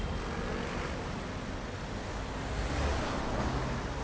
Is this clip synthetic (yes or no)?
no